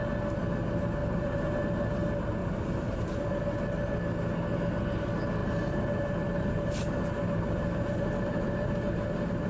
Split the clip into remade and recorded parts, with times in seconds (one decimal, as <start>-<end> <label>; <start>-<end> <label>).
0.0-1.0 recorded; 1.0-1.6 remade; 1.6-2.4 recorded; 2.4-3.2 remade; 3.2-5.4 recorded; 5.4-9.5 remade